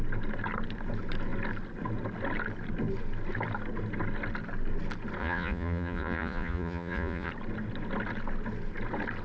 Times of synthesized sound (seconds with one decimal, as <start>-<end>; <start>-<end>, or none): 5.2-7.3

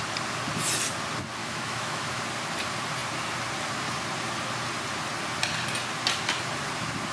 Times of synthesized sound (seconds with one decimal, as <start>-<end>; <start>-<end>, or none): 1.4-2.2

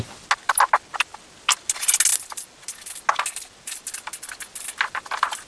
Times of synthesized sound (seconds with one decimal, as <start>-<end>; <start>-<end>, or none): none